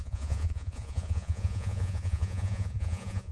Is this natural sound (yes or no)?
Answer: no